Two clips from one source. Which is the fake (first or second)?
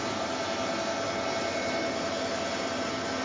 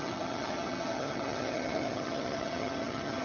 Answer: second